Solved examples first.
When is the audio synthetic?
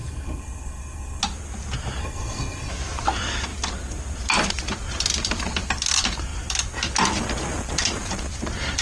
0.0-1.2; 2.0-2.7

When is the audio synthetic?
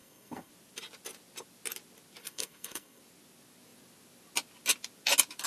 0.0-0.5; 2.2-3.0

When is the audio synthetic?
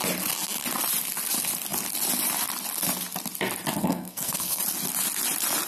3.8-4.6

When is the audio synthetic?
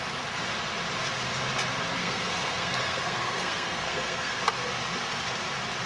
2.0-4.4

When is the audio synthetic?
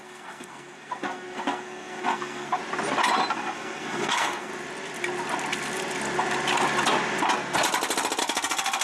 0.0-2.6; 3.3-4.5; 8.2-8.8